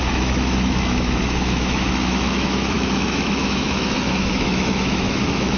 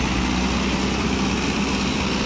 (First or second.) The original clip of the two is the second